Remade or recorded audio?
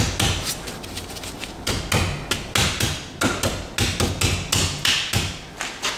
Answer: recorded